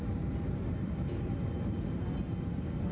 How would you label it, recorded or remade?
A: recorded